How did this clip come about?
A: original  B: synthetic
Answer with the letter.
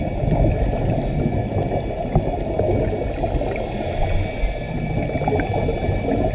A